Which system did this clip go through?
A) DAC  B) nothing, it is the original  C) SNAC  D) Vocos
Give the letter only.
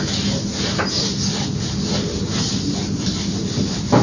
B